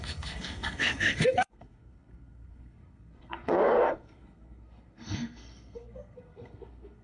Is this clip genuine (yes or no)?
no